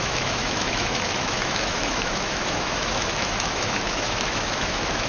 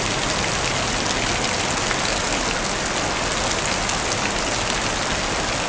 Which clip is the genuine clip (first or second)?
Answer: second